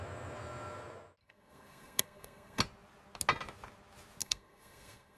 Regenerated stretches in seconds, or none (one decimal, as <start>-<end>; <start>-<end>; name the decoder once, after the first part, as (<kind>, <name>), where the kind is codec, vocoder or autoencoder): 1.2-2.6 (codec, SNAC); 4.2-5.2